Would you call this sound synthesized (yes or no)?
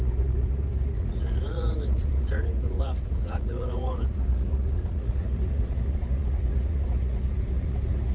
yes